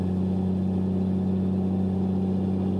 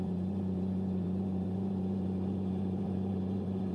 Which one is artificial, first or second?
second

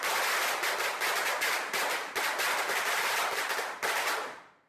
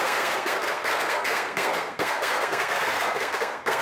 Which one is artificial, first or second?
second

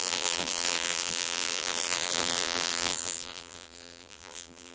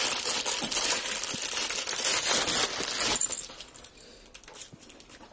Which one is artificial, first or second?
first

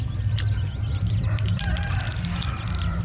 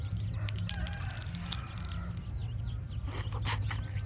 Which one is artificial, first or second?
first